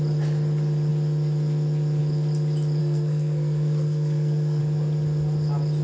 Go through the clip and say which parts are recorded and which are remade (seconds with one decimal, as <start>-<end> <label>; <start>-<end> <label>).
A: 0.0-2.8 recorded; 2.8-4.6 remade; 4.6-5.8 recorded